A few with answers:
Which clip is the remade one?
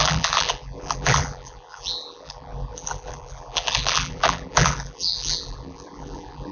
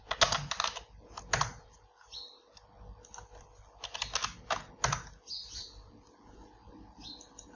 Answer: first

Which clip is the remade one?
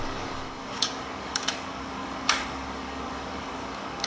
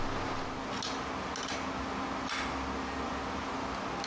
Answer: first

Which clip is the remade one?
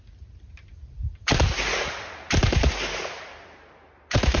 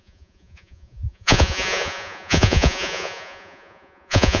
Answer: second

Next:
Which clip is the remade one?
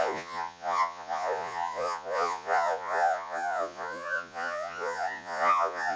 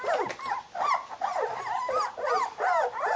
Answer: first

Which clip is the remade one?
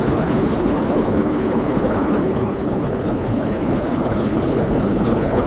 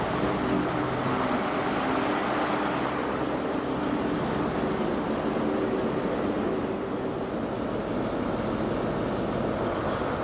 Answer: first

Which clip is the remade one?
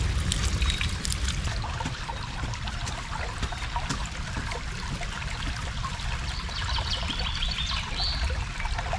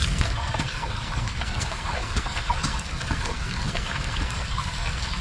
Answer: second